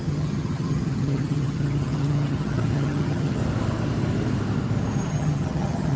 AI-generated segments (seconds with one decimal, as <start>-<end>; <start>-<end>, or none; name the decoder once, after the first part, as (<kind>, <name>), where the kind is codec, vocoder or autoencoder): 0.0-3.4 (vocoder, HiFi-GAN); 5.1-6.0